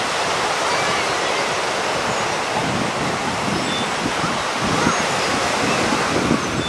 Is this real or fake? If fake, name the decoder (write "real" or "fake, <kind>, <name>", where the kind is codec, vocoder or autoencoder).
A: real